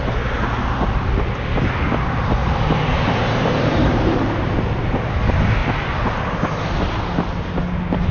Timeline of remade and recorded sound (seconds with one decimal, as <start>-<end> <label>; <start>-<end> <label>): 0.0-2.4 recorded; 2.4-5.1 remade; 5.1-8.1 recorded